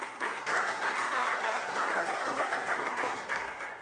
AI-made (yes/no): yes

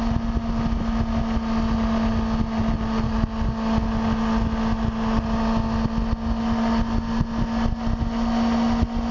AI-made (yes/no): no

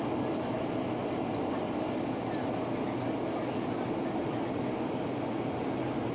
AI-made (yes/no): no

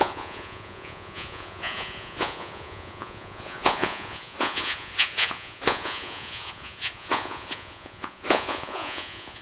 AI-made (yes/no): yes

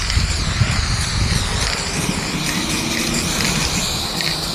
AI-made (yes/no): no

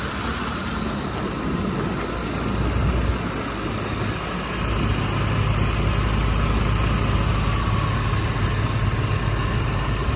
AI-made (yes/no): no